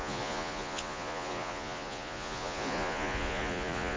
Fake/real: fake